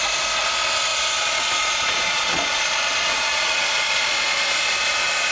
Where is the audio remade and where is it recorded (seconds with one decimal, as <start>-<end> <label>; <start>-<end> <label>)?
0.0-0.9 recorded; 0.9-4.1 remade; 4.1-5.3 recorded